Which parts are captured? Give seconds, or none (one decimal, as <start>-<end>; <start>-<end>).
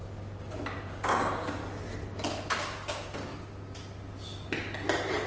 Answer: 0.0-0.9; 1.6-2.6; 3.3-5.3